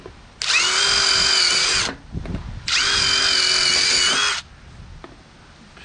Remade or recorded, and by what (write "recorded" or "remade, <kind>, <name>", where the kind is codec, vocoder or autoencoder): recorded